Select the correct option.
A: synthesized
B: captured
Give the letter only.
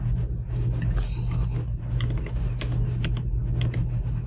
B